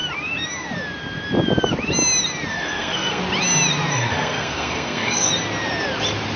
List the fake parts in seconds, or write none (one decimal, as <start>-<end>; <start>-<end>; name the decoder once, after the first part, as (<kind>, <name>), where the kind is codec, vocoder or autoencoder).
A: 2.5-3.2 (codec, SNAC); 3.9-5.3